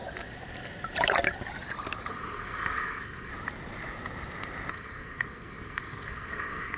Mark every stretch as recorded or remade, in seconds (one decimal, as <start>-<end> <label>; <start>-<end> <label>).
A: 0.0-2.1 recorded; 2.1-3.3 remade; 3.3-4.7 recorded; 4.7-6.8 remade